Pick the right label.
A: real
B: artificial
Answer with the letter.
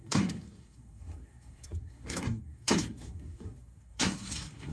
B